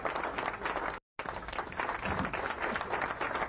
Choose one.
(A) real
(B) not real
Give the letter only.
A